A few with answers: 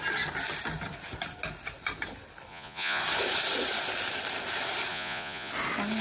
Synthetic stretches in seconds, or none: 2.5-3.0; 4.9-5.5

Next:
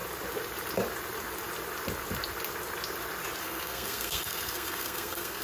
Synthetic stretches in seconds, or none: 3.4-5.4

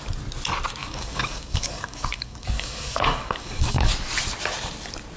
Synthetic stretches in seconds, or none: 0.8-3.9

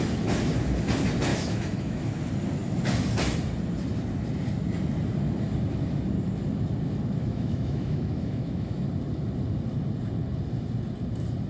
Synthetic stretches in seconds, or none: 1.3-2.2; 7.2-8.8